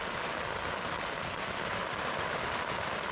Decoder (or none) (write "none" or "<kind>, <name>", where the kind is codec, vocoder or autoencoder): none